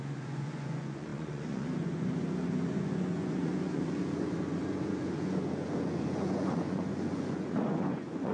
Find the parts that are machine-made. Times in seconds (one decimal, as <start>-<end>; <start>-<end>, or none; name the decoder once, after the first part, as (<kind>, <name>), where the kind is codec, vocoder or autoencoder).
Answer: 0.0-8.3 (vocoder, Vocos)